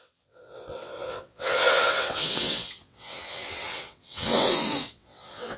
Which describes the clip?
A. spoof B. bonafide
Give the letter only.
A